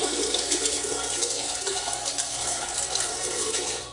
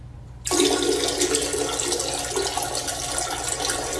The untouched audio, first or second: second